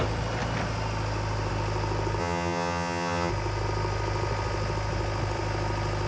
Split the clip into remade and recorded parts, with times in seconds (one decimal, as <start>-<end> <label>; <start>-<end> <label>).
0.0-2.2 recorded; 2.2-3.3 remade; 3.3-6.1 recorded